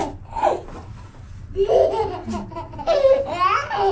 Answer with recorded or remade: recorded